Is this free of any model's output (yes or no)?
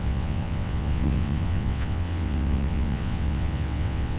no